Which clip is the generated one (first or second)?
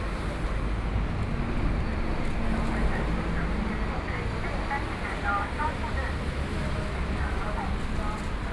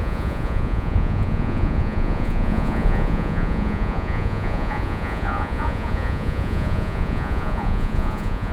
second